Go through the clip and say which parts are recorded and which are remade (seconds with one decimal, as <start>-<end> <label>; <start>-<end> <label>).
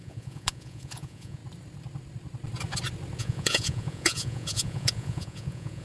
0.0-1.4 remade; 1.4-3.2 recorded; 3.2-5.8 remade